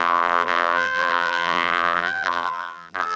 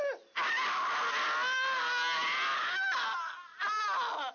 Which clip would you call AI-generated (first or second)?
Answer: first